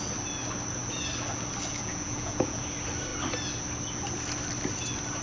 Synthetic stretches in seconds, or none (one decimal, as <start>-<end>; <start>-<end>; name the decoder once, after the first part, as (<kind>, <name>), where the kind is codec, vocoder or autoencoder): 1.8-2.6 (vocoder, Vocos)